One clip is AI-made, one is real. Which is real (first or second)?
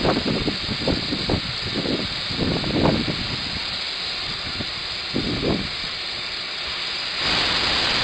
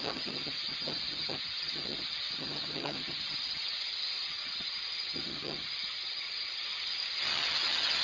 first